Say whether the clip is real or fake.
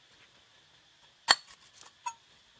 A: real